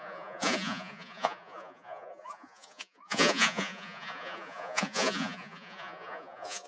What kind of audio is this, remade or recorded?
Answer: remade